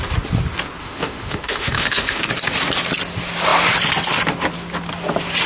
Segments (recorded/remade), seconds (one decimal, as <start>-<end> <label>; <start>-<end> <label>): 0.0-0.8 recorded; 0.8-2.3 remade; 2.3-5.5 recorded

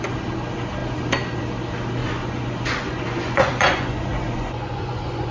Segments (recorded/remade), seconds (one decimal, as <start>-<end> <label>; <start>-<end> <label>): 0.0-2.0 recorded; 2.0-5.3 remade

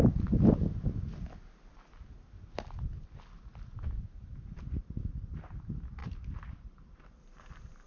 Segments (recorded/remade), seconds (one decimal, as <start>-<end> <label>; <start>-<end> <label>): 0.0-4.8 recorded; 4.8-5.5 remade; 5.5-6.0 recorded; 6.0-7.9 remade

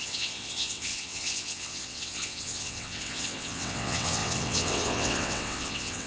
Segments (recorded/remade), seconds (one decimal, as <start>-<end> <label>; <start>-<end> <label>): 0.0-6.1 remade